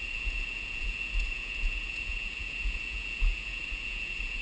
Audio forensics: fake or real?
fake